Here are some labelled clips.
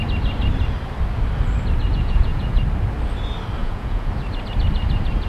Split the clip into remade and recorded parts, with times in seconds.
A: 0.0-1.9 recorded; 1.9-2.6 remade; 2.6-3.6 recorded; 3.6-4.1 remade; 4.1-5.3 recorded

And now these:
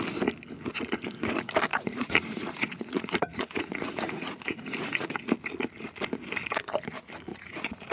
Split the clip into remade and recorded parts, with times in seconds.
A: 0.0-1.7 recorded; 1.7-5.2 remade; 5.2-7.3 recorded; 7.3-7.9 remade

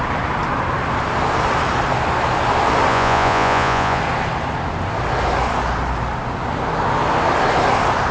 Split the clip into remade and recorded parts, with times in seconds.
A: 0.0-2.9 recorded; 2.9-4.0 remade; 4.0-8.1 recorded

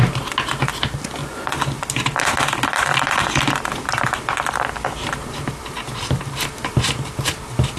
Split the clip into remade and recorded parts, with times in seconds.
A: 0.0-1.2 recorded; 1.2-1.8 remade; 1.8-7.8 recorded

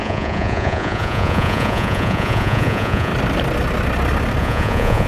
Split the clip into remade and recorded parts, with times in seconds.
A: 0.0-3.1 remade; 3.1-4.4 recorded; 4.4-5.1 remade

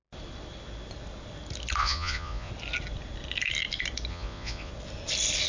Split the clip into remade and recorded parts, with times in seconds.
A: 0.0-1.8 recorded; 1.8-2.5 remade; 2.5-4.1 recorded; 4.1-4.7 remade; 4.7-5.5 recorded

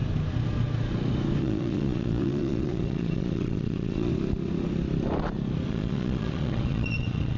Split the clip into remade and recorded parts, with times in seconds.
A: 0.0-1.4 recorded; 1.4-4.1 remade; 4.1-5.7 recorded; 5.7-7.4 remade